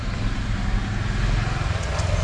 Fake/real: real